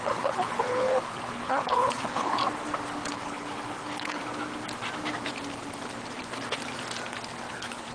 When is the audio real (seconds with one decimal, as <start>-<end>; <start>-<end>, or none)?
2.4-3.1; 4.2-7.5